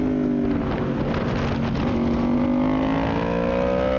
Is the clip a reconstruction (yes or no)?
no